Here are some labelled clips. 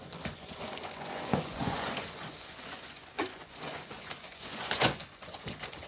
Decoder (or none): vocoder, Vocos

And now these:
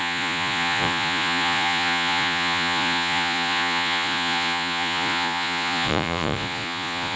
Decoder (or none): vocoder, Vocos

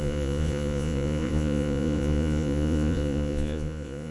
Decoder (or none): vocoder, Vocos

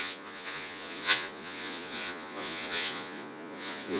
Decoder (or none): vocoder, Vocos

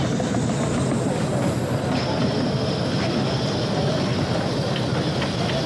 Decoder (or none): none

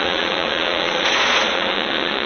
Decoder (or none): vocoder, Vocos